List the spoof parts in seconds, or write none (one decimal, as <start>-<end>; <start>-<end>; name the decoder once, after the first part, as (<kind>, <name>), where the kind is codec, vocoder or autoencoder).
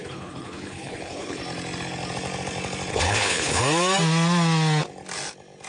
0.0-1.4 (codec, HILCodec); 2.9-3.6